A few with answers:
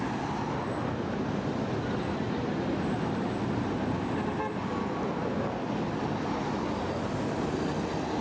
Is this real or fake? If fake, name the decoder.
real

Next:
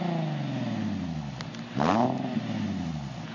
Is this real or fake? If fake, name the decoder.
real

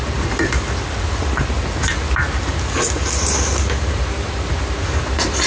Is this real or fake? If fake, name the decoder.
real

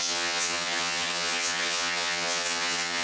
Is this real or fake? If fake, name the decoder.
fake, vocoder, HiFi-GAN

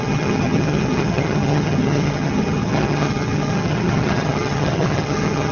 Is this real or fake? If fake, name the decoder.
fake, vocoder, HiFi-GAN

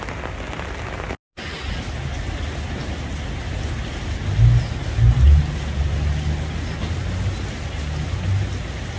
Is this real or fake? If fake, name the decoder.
real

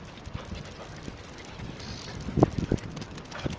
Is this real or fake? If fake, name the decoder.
real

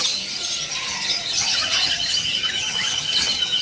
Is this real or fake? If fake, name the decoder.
fake, vocoder, HiFi-GAN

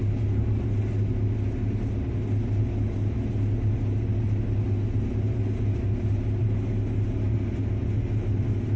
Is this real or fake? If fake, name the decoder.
real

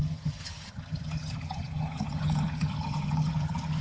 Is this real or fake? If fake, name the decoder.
fake, vocoder, HiFi-GAN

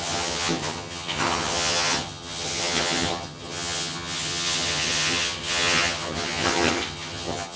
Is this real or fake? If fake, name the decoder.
fake, vocoder, HiFi-GAN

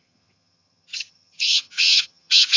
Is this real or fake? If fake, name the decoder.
fake, vocoder, HiFi-GAN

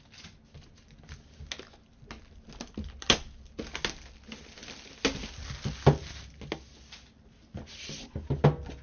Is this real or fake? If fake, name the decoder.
real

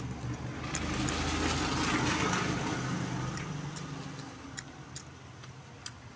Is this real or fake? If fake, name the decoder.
real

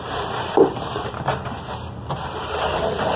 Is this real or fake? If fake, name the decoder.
real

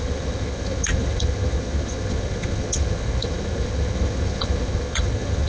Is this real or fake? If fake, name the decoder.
fake, vocoder, HiFi-GAN